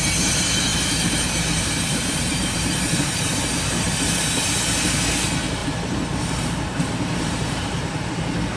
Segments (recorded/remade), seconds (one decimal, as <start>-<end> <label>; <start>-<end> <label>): 0.0-0.7 recorded; 0.7-3.4 remade; 3.4-5.6 recorded; 5.6-8.1 remade; 8.1-8.6 recorded